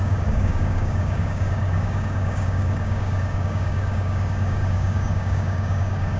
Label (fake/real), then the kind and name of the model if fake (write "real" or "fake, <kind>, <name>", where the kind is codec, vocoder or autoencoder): fake, codec, DAC